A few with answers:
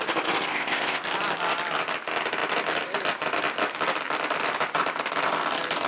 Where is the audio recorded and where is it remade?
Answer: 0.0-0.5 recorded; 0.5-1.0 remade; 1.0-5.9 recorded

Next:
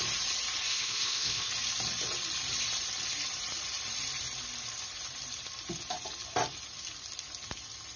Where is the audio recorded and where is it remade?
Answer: 0.0-0.7 recorded; 0.7-1.5 remade; 1.5-8.0 recorded

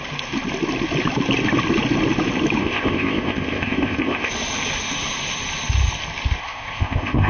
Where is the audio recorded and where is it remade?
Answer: 0.0-2.6 recorded; 2.6-4.3 remade; 4.3-6.4 recorded; 6.4-7.3 remade

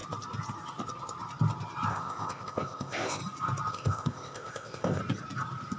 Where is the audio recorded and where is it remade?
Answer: 0.0-1.9 recorded; 1.9-3.2 remade; 3.2-3.7 recorded; 3.7-5.0 remade; 5.0-5.8 recorded

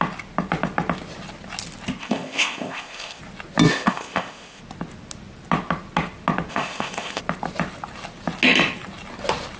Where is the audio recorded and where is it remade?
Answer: 0.0-2.0 recorded; 2.0-3.2 remade; 3.2-3.7 recorded; 3.7-4.6 remade; 4.6-6.5 recorded; 6.5-7.2 remade; 7.2-9.6 recorded

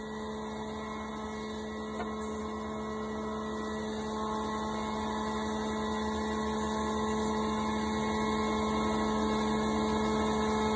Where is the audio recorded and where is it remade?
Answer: 0.0-10.8 recorded

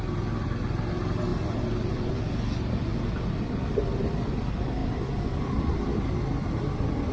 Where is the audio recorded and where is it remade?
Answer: 0.0-7.1 recorded